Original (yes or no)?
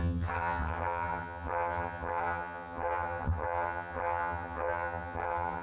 no